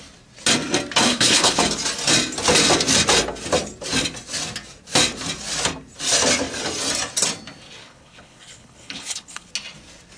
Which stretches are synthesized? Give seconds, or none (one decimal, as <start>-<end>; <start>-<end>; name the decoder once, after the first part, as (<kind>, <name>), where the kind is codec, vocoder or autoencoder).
1.1-1.6 (codec, HILCodec); 7.8-9.5